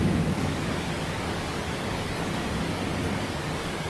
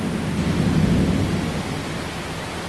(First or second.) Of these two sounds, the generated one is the first